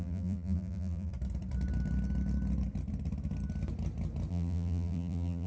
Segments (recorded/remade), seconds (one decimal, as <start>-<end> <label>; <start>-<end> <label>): 0.0-1.1 remade; 1.1-4.3 recorded; 4.3-5.5 remade